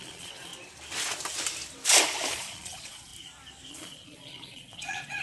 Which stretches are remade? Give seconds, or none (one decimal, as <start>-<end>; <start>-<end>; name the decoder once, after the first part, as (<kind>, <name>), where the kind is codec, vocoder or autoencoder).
0.0-0.5 (vocoder, Vocos); 2.3-3.1; 3.7-5.2